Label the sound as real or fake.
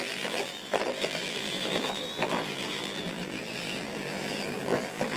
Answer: fake